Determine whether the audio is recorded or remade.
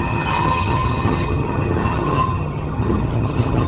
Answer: remade